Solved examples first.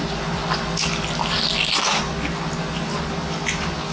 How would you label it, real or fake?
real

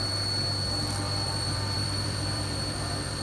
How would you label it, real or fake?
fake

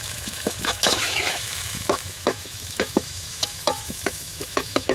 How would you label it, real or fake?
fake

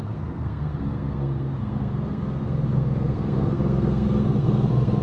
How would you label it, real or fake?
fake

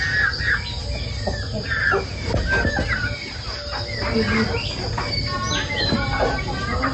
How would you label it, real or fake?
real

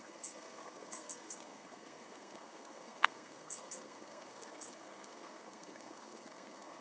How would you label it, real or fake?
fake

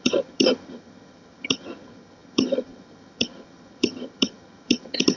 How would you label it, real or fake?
fake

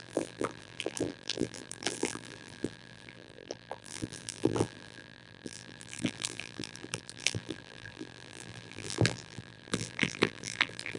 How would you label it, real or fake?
fake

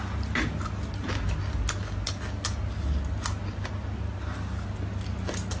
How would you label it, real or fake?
real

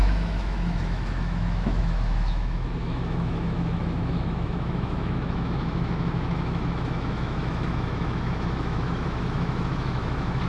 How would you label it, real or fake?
fake